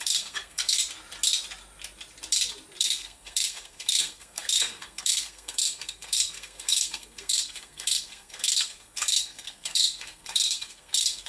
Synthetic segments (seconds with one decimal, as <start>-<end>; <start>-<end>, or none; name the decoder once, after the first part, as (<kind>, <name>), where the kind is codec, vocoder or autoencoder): 0.0-0.8 (codec, SNAC); 2.8-11.3